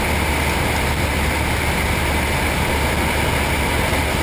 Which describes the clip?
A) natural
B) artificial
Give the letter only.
A